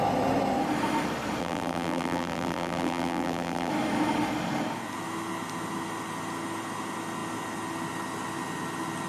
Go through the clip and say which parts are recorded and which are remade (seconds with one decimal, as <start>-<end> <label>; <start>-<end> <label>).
0.0-1.4 recorded; 1.4-3.7 remade; 3.7-9.1 recorded